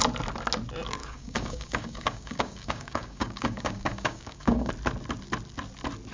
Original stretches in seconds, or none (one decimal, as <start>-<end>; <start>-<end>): 0.0-1.0; 4.7-6.1